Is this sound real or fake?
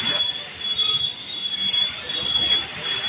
real